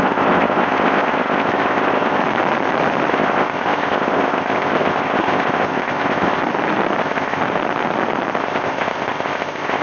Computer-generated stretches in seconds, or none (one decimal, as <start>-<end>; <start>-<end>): 0.0-2.2; 3.1-6.4; 7.0-7.4; 8.4-9.8